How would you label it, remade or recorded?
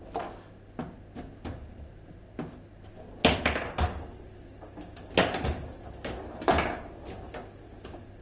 recorded